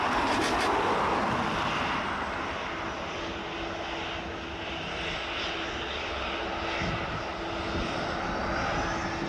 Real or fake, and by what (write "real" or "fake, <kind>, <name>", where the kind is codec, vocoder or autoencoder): real